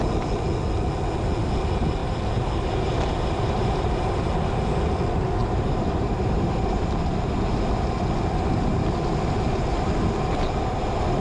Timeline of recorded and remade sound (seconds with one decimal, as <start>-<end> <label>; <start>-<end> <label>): 0.0-2.0 recorded; 2.0-4.2 remade; 4.2-5.4 recorded; 5.4-6.9 remade; 6.9-11.2 recorded